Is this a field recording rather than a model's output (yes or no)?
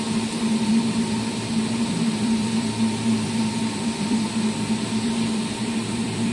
no